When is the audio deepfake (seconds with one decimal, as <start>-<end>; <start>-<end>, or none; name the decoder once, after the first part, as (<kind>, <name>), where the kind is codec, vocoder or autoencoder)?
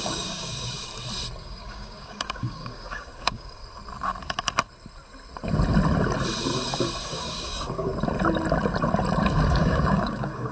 0.0-0.9 (codec, DAC); 1.4-3.6; 7.0-7.9; 9.5-10.5